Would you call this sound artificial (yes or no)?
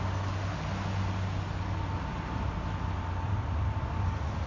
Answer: no